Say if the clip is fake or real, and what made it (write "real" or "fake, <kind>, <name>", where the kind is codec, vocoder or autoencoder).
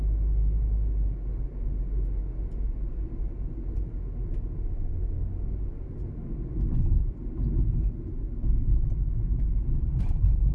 real